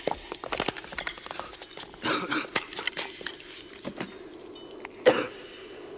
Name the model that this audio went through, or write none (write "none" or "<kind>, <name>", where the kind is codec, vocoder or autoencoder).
none